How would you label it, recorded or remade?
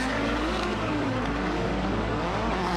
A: remade